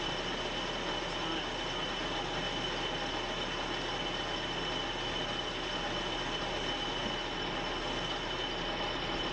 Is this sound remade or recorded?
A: recorded